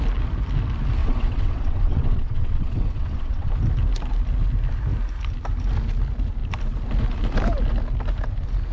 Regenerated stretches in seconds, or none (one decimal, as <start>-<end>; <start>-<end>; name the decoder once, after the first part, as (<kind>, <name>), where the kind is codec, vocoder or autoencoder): 1.0-3.5 (vocoder, WaveNeXt)